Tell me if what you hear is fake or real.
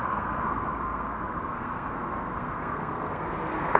fake